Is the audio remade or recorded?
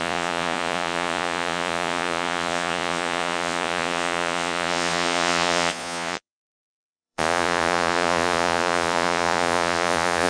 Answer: remade